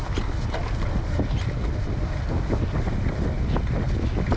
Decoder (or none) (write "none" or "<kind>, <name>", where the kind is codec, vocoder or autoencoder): none